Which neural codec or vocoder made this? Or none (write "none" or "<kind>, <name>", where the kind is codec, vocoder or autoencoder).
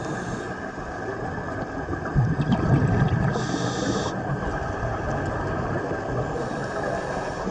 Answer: none